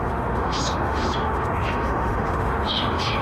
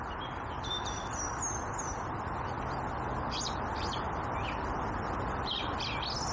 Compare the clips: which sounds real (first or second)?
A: second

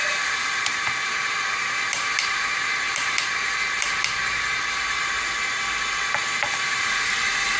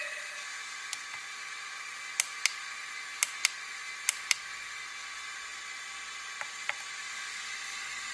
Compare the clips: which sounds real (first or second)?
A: second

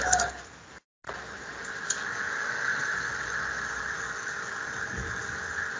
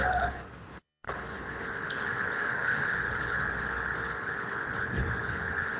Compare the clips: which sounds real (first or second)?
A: first